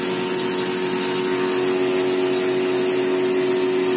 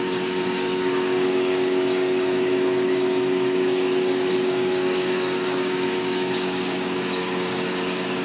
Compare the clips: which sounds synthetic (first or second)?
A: second